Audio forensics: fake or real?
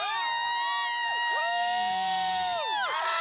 real